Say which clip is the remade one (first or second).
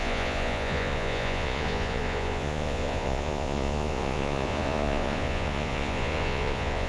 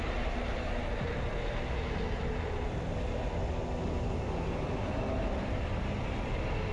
first